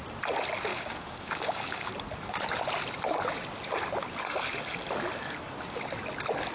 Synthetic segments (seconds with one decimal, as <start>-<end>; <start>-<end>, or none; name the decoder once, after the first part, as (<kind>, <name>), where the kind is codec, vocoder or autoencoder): 0.7-1.9 (codec, DAC)